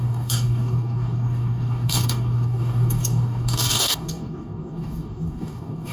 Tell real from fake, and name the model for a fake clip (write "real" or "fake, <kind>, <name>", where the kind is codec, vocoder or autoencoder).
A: fake, codec, DAC